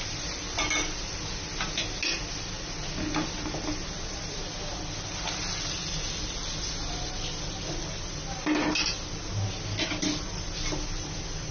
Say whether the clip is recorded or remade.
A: recorded